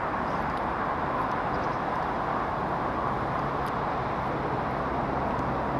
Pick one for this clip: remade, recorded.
recorded